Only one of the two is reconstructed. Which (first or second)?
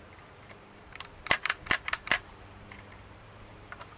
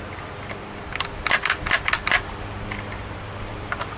first